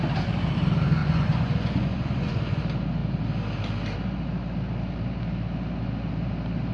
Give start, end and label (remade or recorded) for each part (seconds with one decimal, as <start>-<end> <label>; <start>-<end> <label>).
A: 0.0-1.0 recorded; 1.0-2.6 remade; 2.6-6.7 recorded